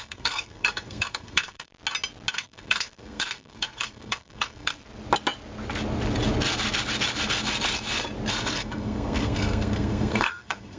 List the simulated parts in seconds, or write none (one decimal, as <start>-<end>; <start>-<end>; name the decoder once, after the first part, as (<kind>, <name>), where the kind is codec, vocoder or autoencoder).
0.0-1.7 (codec, SNAC); 2.3-4.8; 8.3-10.8